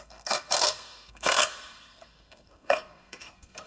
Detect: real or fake fake